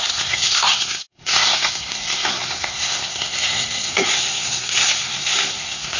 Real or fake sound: fake